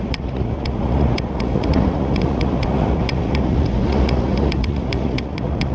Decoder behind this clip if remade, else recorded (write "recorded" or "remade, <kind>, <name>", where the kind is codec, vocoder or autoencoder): remade, vocoder, Vocos